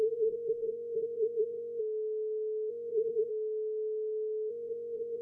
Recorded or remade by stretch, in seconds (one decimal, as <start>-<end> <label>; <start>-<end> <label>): 0.0-1.8 remade; 1.8-2.7 recorded; 2.7-3.3 remade; 3.3-4.5 recorded; 4.5-5.2 remade